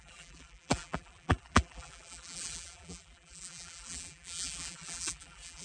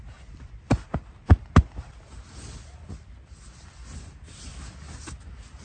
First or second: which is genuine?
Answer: second